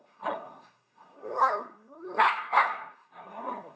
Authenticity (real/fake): fake